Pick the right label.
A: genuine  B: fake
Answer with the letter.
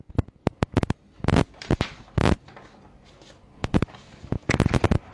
A